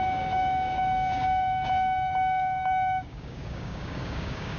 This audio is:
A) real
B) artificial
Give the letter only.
B